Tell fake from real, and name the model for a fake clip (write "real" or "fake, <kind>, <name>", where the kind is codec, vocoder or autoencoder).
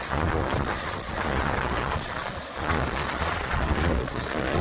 fake, vocoder, Vocos